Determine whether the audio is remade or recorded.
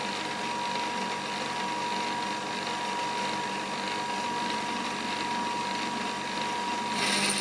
recorded